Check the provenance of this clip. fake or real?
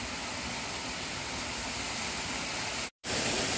real